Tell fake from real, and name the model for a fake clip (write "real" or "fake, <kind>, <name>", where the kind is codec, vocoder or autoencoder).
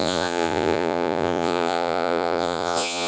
fake, vocoder, Vocos